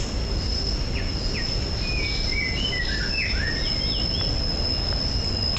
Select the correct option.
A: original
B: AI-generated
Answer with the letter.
A